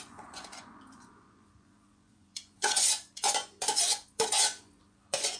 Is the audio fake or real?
fake